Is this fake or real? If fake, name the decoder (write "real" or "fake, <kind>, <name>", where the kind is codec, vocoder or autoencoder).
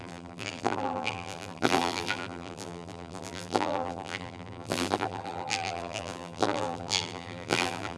fake, vocoder, BigVGAN v2